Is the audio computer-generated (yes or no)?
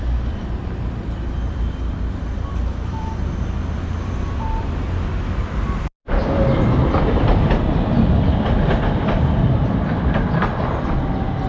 yes